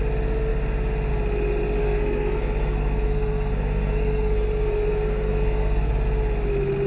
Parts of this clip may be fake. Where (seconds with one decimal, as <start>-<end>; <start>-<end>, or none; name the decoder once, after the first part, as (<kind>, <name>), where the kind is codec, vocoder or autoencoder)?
1.8-5.9 (codec, SNAC)